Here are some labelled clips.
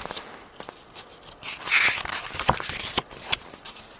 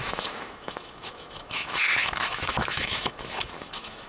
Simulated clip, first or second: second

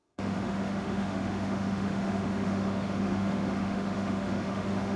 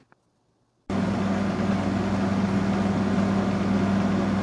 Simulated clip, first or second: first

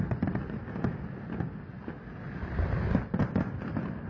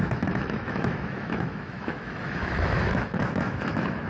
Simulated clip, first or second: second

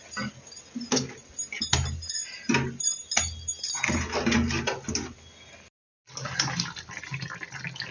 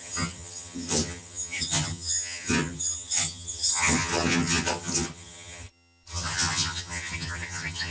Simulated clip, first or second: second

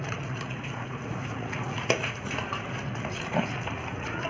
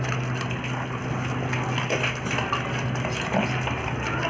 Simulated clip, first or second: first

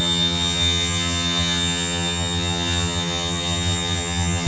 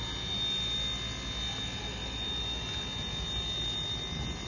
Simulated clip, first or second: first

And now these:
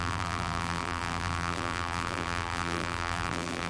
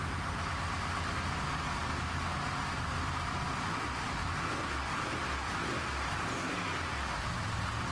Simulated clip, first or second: first